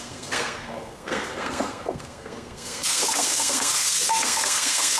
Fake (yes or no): yes